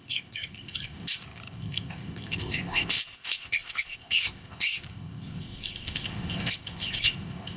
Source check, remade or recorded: remade